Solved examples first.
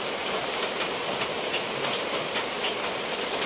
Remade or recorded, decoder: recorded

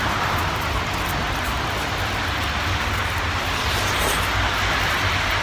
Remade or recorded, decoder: recorded